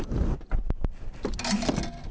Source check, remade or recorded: recorded